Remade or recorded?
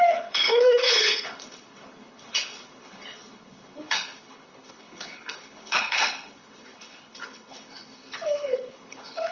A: remade